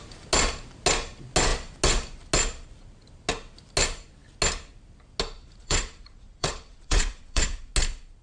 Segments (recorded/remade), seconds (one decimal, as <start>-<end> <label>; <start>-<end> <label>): 0.0-5.4 recorded; 5.4-7.7 remade; 7.7-8.2 recorded